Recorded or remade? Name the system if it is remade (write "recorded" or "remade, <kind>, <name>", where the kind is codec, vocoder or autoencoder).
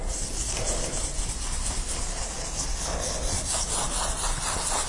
recorded